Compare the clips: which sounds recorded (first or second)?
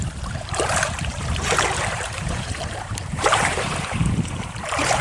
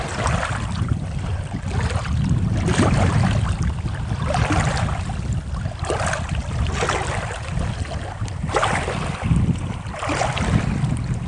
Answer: second